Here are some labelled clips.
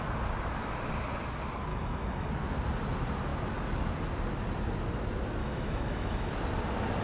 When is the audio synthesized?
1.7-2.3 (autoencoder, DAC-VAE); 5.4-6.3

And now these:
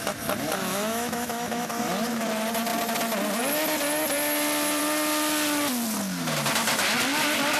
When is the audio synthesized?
0.6-1.7 (autoencoder, DAC-VAE)

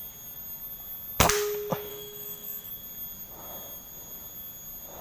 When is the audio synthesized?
1.9-2.7 (autoencoder, DAC-VAE)

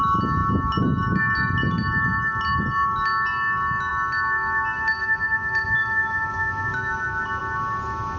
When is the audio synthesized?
none